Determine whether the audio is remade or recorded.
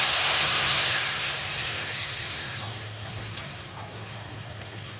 remade